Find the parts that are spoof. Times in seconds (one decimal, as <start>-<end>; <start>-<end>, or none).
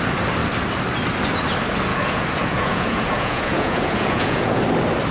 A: 1.9-4.6